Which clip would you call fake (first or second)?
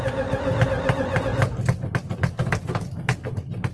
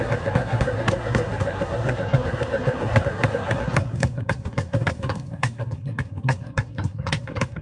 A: second